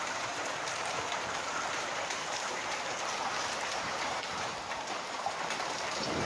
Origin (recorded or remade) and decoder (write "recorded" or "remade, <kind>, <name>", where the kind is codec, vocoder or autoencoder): remade, vocoder, BigVGAN v2